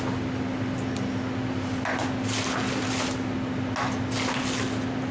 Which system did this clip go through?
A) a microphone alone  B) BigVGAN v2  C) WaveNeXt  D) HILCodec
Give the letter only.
A